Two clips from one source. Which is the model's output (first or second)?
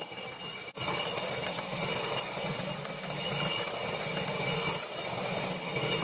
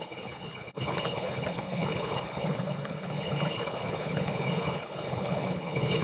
second